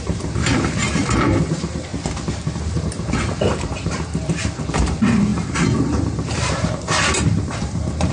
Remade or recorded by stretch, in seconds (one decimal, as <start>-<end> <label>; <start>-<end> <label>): 0.0-1.9 remade; 1.9-2.5 recorded; 2.5-8.1 remade